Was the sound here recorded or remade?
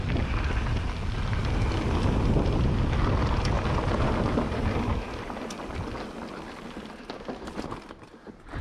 recorded